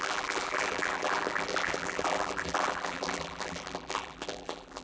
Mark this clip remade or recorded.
remade